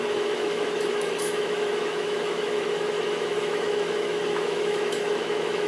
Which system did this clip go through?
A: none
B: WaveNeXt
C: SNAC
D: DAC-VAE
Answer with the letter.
D